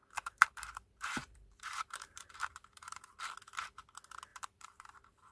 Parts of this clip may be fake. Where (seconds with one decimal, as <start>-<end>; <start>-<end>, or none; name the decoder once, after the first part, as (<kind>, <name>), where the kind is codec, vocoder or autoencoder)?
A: 0.0-3.2 (vocoder, BigVGAN v2); 4.3-5.3